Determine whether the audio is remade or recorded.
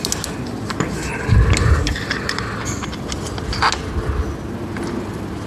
recorded